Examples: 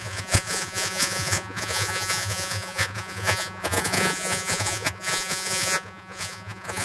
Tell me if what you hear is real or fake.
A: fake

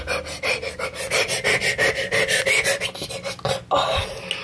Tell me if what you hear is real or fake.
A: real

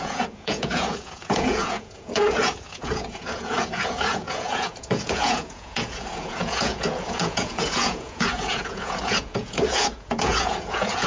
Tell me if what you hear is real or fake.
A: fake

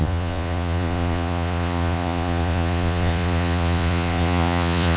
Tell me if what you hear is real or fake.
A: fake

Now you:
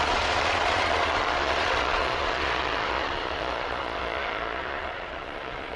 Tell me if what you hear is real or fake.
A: fake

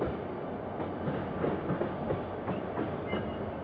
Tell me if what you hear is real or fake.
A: real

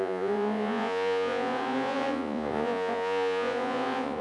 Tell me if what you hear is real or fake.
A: fake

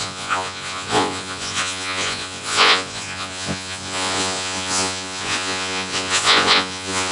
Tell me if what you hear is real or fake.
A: fake